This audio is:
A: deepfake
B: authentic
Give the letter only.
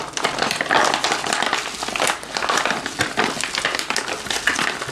B